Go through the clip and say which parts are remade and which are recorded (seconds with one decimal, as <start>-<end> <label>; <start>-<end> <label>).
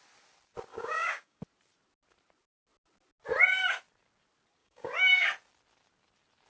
0.0-0.7 recorded; 0.7-1.4 remade; 1.4-4.6 recorded; 4.6-5.3 remade; 5.3-6.5 recorded